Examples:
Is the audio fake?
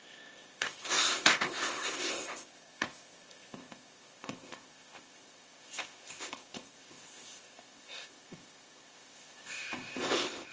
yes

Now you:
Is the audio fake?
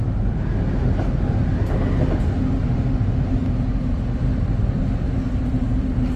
no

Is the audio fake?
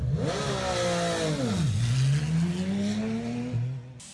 no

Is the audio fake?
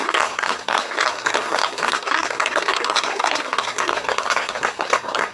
yes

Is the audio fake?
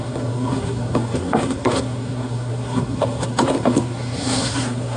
yes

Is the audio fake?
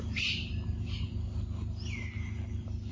no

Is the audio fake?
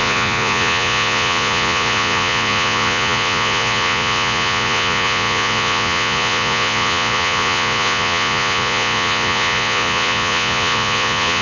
yes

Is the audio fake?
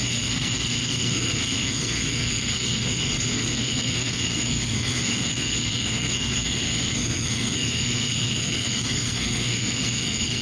yes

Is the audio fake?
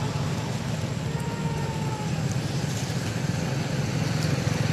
no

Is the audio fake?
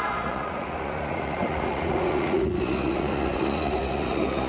yes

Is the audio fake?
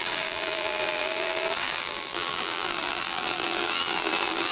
yes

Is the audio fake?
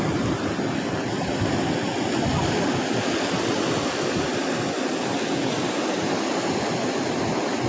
no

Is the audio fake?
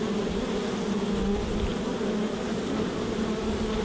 no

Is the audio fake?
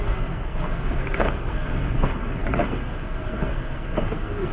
yes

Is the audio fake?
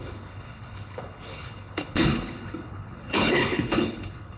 yes